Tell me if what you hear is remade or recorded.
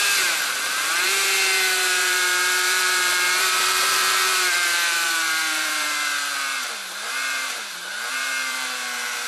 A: remade